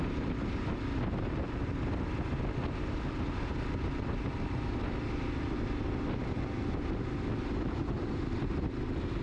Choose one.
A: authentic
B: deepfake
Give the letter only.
A